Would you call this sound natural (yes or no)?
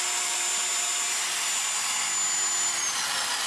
yes